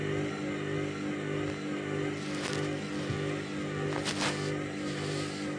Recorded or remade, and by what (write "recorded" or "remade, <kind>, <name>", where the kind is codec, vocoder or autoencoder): recorded